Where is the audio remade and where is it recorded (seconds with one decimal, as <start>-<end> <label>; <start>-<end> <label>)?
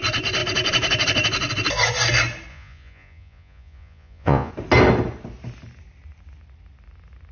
0.0-2.5 recorded; 2.5-4.5 remade; 4.5-7.3 recorded